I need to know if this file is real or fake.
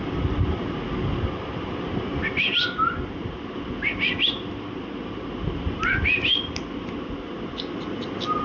real